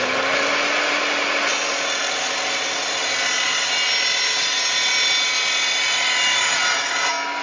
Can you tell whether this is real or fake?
real